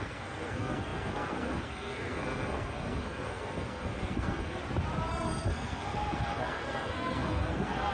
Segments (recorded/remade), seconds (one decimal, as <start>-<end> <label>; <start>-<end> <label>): 0.0-4.6 remade; 4.6-5.1 recorded; 5.1-7.9 remade